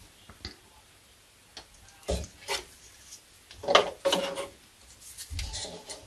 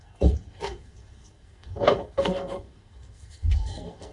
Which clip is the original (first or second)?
first